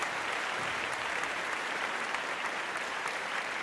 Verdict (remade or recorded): remade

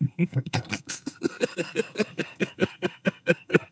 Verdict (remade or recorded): remade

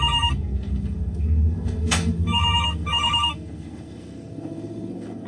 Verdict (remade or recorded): remade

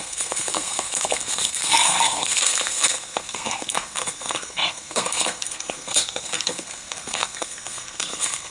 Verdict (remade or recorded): remade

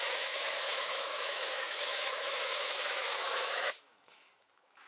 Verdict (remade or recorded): remade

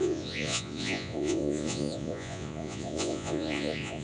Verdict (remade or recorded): remade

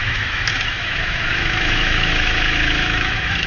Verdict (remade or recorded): remade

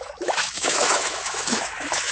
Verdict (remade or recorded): remade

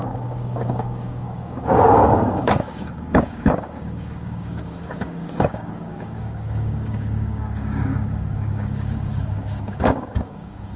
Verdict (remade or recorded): remade